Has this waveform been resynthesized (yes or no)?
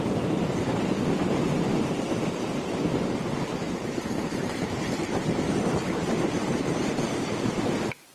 yes